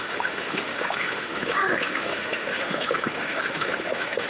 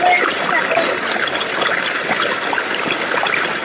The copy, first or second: first